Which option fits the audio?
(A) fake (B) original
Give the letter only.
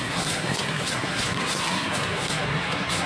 A